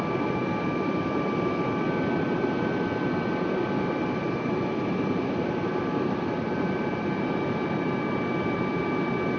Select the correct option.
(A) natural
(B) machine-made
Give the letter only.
A